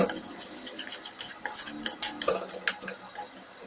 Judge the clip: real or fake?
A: real